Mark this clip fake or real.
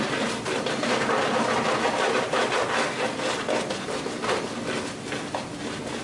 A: real